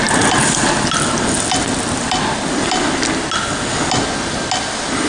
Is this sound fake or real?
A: real